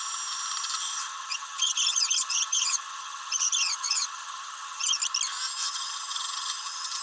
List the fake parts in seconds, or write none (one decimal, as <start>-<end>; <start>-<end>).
0.8-5.0; 5.6-7.0